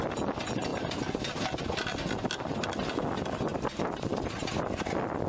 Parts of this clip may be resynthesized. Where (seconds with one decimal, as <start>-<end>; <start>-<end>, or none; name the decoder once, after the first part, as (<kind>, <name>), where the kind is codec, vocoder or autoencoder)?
3.5-4.5 (vocoder, BigVGAN v2)